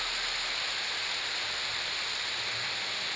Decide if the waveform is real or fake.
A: real